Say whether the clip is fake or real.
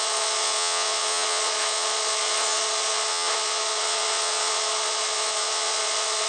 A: fake